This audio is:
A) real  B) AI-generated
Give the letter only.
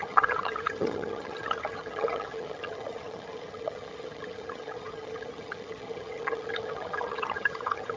B